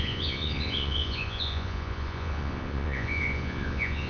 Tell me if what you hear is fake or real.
fake